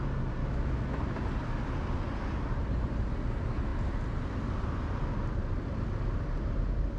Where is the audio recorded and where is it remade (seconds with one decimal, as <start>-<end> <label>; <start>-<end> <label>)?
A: 0.0-0.4 recorded; 0.4-1.0 remade; 1.0-7.0 recorded